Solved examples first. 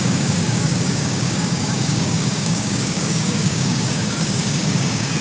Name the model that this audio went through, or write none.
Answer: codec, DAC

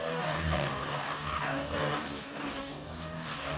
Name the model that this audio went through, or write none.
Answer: codec, DAC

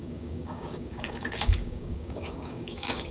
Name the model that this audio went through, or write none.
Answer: codec, DAC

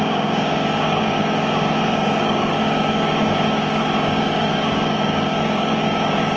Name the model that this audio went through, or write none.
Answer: codec, DAC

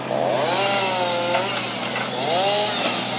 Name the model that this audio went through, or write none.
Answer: none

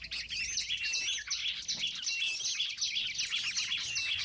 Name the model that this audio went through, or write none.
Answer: none